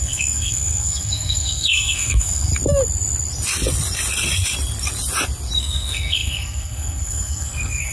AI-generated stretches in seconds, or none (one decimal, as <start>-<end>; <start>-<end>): 0.0-2.5; 5.6-7.9